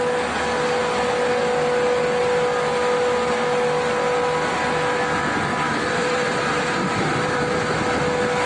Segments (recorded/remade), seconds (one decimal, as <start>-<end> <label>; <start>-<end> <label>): 0.0-5.5 recorded; 5.5-7.4 remade; 7.4-8.5 recorded